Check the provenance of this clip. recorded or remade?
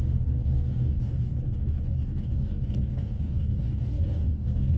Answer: remade